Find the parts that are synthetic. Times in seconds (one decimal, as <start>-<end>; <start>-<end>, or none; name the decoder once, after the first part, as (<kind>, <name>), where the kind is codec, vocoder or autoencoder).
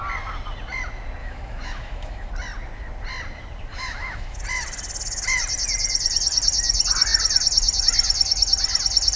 1.2-2.3 (autoencoder, DAC-VAE); 3.7-4.4